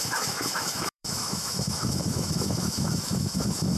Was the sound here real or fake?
fake